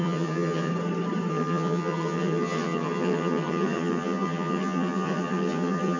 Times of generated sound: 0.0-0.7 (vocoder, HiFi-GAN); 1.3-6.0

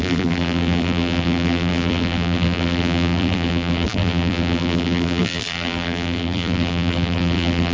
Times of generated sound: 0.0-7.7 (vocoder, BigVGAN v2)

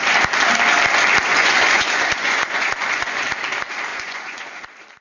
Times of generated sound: 1.3-3.2 (vocoder, Vocos); 3.9-4.6